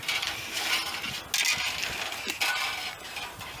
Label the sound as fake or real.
real